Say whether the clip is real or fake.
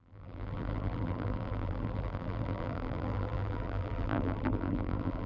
fake